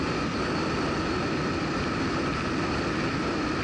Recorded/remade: recorded